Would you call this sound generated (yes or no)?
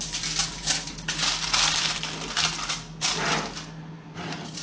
no